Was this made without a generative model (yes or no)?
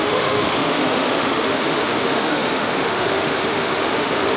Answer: no